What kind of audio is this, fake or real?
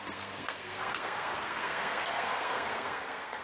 fake